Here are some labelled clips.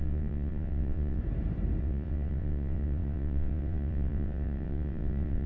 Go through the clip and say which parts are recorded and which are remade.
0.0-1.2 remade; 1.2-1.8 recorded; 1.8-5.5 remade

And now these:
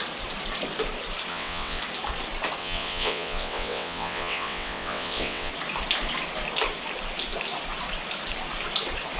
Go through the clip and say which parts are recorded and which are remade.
0.0-1.3 recorded; 1.3-1.8 remade; 1.8-2.6 recorded; 2.6-5.5 remade; 5.5-9.2 recorded

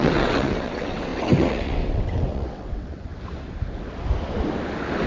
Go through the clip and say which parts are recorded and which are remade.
0.0-3.1 remade; 3.1-5.1 recorded

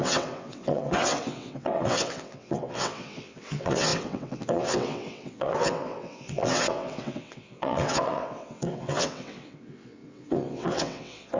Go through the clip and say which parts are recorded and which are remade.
0.0-11.4 remade

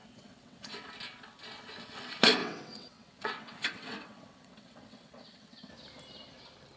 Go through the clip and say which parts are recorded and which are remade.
0.0-0.9 remade; 0.9-2.4 recorded; 2.4-5.7 remade; 5.7-6.8 recorded

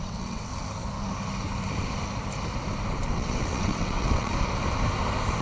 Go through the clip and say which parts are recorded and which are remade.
0.0-0.5 remade; 0.5-3.1 recorded; 3.1-4.3 remade; 4.3-5.4 recorded

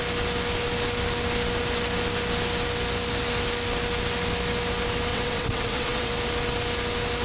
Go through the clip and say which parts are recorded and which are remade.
0.0-5.1 recorded; 5.1-6.1 remade; 6.1-7.2 recorded